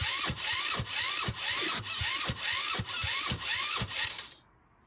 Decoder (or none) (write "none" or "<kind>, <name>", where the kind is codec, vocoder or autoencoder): none